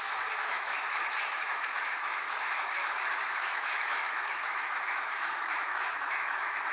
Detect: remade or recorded remade